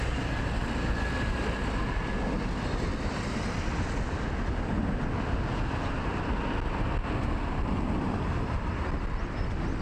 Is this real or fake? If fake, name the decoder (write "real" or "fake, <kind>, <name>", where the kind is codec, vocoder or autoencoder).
real